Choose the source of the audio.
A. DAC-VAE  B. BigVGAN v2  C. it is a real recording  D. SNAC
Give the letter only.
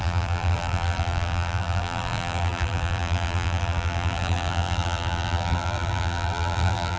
B